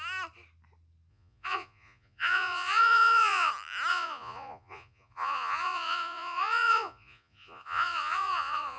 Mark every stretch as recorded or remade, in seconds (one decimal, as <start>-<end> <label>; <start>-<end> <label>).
0.0-1.1 recorded; 1.1-3.5 remade; 3.5-3.9 recorded; 3.9-8.8 remade